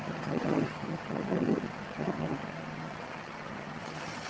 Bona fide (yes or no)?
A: no